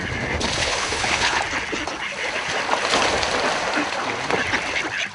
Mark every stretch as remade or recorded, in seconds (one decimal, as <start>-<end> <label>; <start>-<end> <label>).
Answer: 0.0-0.6 recorded; 0.6-1.4 remade; 1.4-5.1 recorded